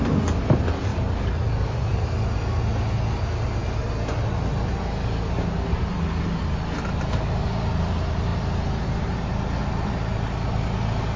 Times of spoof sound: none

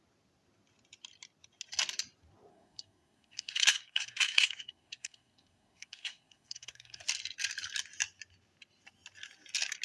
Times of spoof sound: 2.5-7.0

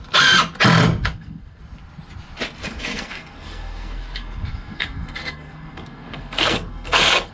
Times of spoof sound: 1.1-1.6; 2.6-7.3